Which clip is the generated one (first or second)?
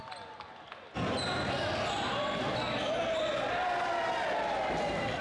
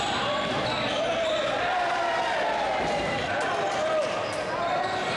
second